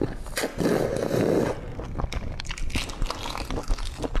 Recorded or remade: recorded